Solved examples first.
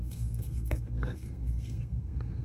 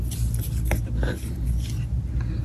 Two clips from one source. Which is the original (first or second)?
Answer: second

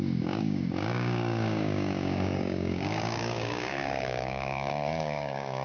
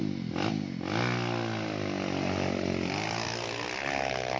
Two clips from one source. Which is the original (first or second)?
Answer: second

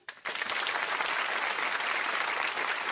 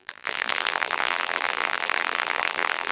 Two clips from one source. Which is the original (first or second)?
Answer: first